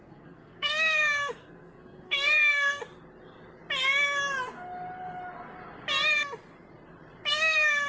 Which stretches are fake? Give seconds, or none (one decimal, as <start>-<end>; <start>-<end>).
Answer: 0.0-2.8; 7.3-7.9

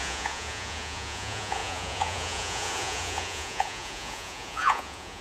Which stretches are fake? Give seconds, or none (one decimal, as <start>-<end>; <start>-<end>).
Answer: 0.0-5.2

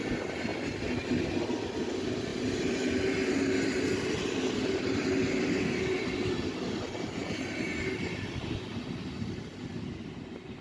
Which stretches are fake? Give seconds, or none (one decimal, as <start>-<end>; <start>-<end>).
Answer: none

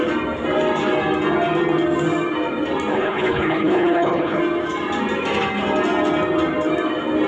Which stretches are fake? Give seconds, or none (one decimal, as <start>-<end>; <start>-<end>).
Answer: 2.9-4.4

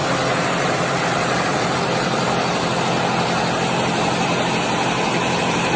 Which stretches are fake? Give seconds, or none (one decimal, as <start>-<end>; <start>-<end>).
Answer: 0.0-2.8

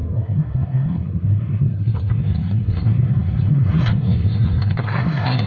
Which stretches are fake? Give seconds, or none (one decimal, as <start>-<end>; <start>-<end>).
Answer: 0.0-5.5